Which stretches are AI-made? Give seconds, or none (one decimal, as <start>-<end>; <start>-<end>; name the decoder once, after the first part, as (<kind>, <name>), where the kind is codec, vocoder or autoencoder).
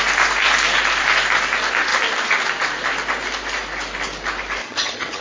4.6-5.2 (vocoder, HiFi-GAN)